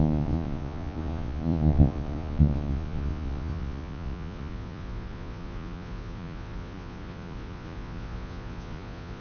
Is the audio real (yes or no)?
no